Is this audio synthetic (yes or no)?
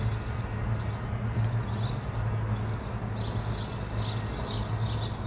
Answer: no